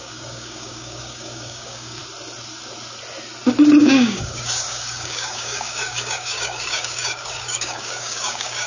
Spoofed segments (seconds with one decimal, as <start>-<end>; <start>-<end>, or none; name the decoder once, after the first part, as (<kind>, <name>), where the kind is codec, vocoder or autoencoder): 0.0-2.0 (codec, DAC); 3.8-8.7